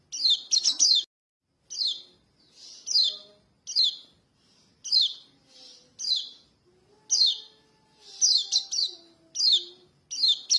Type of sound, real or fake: real